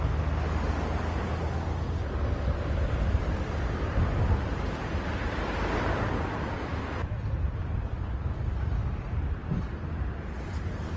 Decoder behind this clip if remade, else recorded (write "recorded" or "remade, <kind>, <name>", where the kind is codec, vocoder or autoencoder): recorded